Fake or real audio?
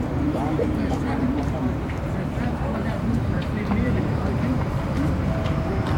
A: fake